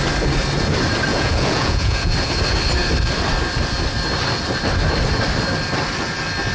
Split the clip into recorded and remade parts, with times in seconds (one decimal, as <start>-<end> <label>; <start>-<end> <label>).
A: 0.0-1.1 recorded; 1.1-2.1 remade; 2.1-6.5 recorded